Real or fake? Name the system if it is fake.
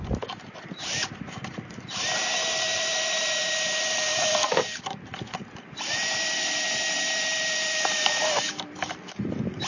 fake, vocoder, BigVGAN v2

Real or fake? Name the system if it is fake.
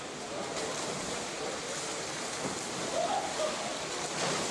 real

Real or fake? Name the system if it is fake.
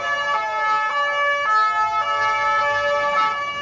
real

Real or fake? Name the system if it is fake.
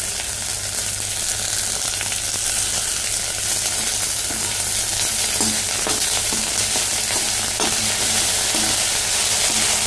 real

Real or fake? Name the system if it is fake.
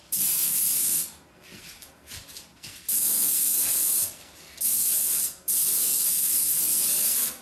fake, codec, SNAC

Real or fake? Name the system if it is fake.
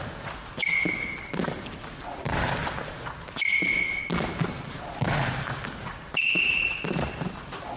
real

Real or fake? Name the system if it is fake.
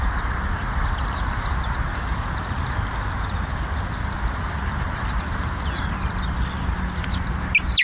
real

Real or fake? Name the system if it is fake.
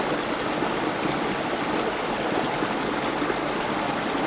real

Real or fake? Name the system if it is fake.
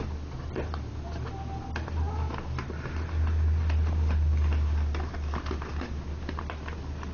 real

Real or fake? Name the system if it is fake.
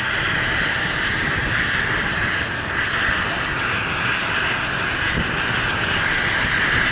real